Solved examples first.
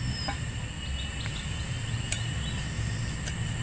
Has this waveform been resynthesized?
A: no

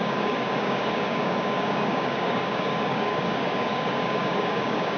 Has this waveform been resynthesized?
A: yes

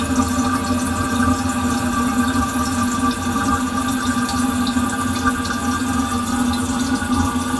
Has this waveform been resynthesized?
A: no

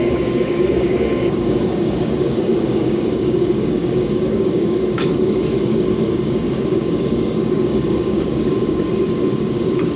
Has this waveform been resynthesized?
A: yes